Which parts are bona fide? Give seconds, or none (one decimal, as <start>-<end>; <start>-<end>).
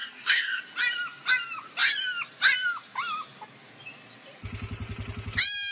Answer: 0.6-5.7